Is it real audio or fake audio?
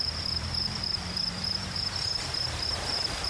fake